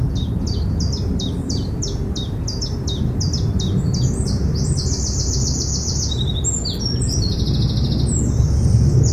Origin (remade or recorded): recorded